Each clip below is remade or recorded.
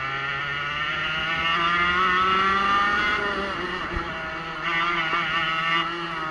recorded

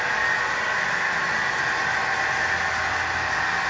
recorded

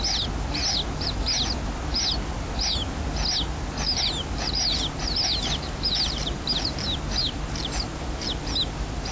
recorded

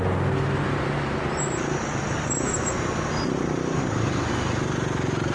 recorded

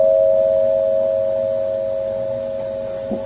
recorded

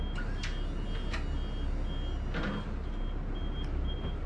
recorded